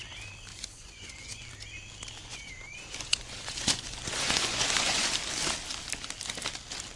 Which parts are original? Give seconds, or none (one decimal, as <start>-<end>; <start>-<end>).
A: 0.0-0.5; 1.5-2.2; 5.1-7.0